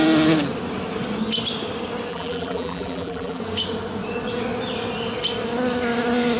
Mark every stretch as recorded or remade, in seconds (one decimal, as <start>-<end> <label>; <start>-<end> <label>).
0.0-2.1 recorded; 2.1-3.4 remade; 3.4-6.4 recorded